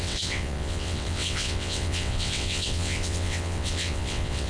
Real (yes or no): no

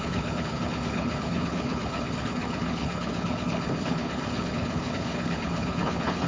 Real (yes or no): no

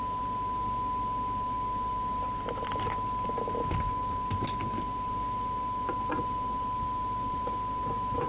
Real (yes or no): yes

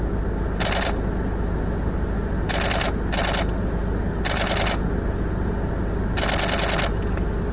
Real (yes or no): yes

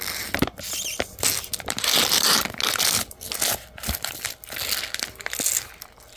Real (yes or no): yes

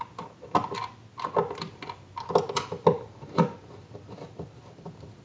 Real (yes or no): yes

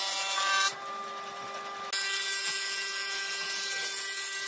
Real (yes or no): yes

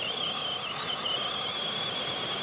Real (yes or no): yes